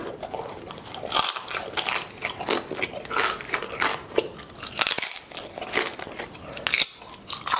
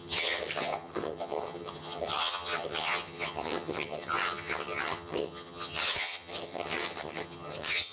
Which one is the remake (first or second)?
second